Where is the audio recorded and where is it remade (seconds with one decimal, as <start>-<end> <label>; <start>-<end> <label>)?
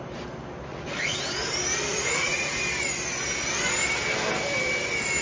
0.0-0.7 recorded; 0.7-1.2 remade; 1.2-1.9 recorded; 1.9-2.6 remade; 2.6-5.2 recorded